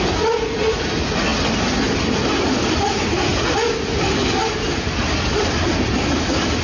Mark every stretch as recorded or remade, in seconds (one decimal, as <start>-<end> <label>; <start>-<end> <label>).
0.0-6.6 recorded